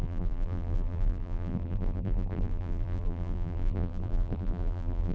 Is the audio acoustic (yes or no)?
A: no